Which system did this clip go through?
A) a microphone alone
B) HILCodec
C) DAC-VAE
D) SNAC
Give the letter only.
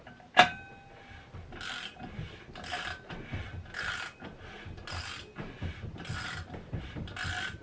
A